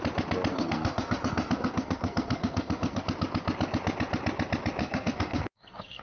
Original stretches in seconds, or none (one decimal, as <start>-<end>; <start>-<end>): 0.0-0.5; 3.0-4.8